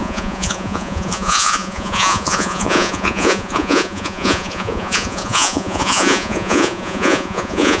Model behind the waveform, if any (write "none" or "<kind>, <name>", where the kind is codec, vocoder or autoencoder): vocoder, Vocos